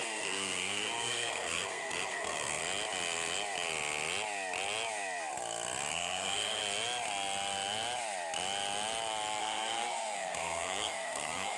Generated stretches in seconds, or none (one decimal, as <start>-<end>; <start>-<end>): 0.0-2.6; 5.9-6.6; 9.4-11.6